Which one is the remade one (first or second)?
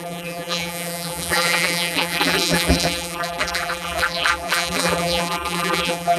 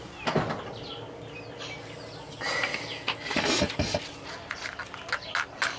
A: first